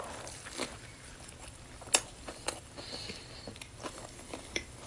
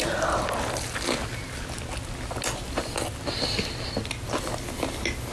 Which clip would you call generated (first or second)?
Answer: first